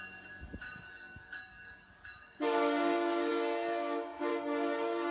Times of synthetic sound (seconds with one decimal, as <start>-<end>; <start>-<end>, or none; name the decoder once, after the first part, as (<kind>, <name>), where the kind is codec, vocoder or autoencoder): 0.6-3.3 (codec, DAC); 4.3-5.1

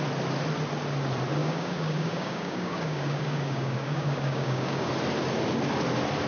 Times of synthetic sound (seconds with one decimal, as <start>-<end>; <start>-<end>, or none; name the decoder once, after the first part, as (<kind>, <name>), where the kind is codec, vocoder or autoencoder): 1.4-4.9 (codec, DAC)

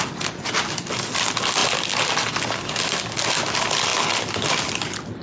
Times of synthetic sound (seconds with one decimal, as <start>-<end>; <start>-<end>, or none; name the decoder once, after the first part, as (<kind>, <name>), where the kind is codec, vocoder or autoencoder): none

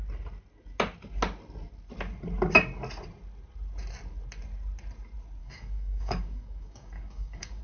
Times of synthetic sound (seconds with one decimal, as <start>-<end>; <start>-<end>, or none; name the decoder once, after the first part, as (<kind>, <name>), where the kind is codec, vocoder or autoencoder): 5.4-7.6 (codec, DAC)

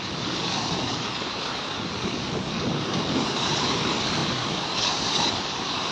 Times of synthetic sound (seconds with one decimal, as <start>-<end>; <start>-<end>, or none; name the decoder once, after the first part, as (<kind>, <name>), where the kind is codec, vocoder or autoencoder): 0.0-5.9 (codec, DAC)